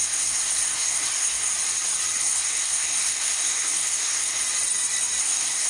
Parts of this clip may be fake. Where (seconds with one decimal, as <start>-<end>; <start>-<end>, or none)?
0.0-1.5; 2.2-4.4; 5.2-5.7